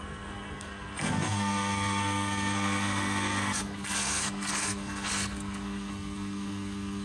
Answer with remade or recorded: remade